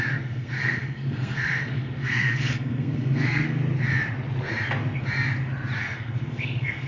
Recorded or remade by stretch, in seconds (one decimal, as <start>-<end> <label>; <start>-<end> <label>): 0.0-3.6 remade; 3.6-5.8 recorded; 5.8-6.9 remade